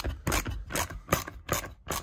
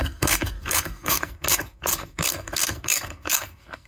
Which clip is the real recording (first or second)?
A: first